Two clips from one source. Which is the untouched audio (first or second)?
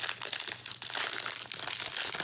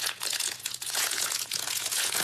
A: first